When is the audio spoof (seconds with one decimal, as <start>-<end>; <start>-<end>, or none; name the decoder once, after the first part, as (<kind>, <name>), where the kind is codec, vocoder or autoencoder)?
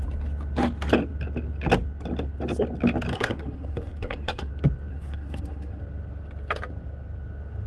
3.1-4.5 (codec, SNAC); 4.9-5.8